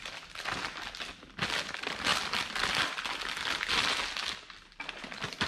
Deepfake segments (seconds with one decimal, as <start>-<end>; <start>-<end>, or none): none